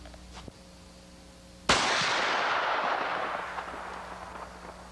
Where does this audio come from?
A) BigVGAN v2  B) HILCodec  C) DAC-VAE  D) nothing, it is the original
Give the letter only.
D